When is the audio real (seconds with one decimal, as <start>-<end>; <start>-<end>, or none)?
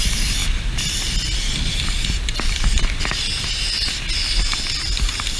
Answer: 0.0-5.4